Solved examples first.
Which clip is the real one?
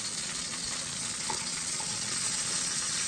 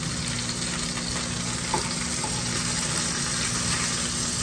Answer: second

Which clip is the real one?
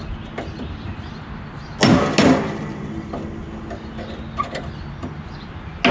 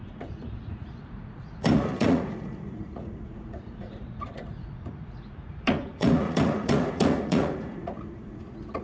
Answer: first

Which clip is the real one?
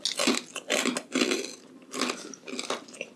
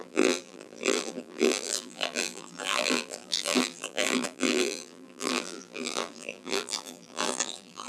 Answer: first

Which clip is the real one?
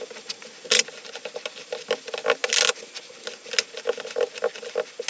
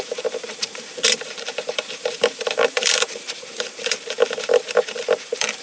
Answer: first